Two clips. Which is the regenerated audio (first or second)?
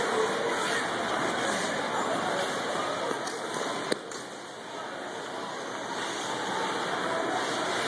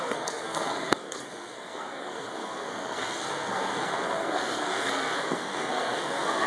second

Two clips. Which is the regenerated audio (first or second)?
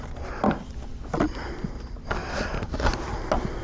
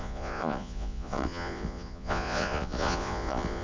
second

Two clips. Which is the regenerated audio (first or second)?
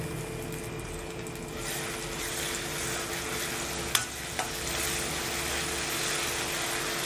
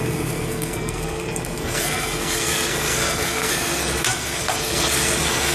second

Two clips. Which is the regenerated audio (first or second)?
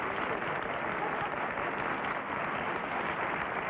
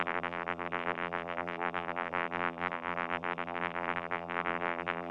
second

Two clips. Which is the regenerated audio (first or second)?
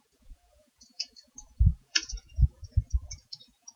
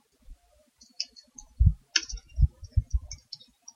first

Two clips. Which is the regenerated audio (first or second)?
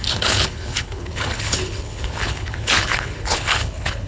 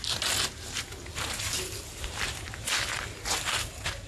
first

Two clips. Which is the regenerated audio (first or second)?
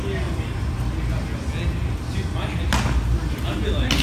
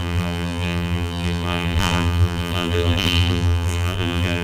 second